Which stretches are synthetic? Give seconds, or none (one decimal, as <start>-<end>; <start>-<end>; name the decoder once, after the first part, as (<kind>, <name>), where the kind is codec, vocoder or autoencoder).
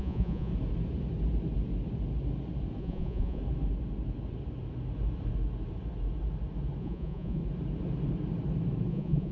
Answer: 0.0-0.5 (vocoder, Vocos); 2.8-3.4; 6.8-7.4; 8.9-9.3